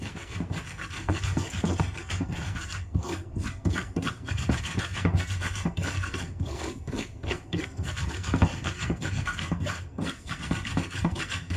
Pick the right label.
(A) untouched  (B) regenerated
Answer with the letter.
B